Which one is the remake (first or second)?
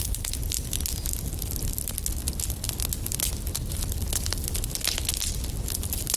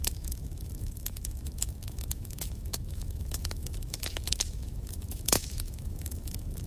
second